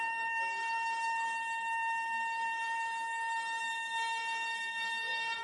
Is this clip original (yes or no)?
no